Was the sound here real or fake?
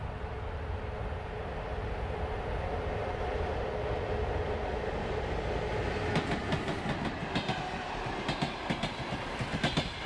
real